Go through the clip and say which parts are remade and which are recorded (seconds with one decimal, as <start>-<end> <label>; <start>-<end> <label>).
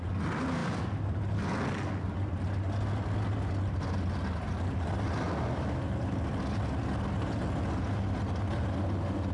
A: 0.0-9.3 recorded